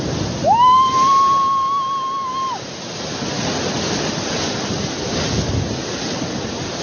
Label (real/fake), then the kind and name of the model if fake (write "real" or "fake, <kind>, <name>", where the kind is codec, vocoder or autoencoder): real